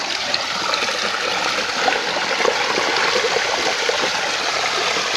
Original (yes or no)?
yes